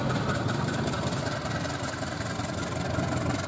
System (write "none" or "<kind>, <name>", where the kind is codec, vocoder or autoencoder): none